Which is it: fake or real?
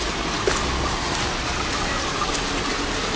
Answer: real